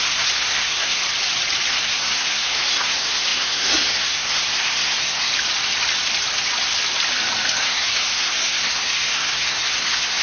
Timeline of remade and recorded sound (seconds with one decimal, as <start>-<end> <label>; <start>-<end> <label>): 0.0-1.0 remade; 1.0-1.7 recorded; 1.7-5.3 remade; 5.3-7.6 recorded; 7.6-10.2 remade